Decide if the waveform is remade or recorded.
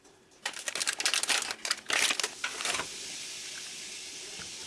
recorded